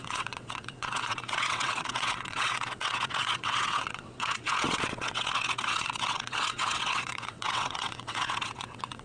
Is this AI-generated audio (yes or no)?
yes